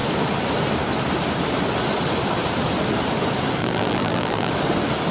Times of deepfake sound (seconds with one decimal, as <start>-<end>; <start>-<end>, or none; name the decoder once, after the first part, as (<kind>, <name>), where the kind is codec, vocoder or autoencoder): 3.6-4.5 (vocoder, BigVGAN v2)